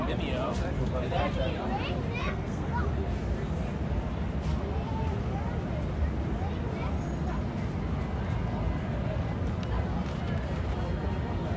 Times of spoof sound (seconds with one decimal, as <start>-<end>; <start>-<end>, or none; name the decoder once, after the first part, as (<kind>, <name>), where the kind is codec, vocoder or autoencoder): 2.2-2.8 (codec, SNAC)